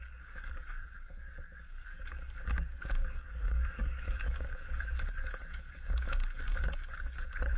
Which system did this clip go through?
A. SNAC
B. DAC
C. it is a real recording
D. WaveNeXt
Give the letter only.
B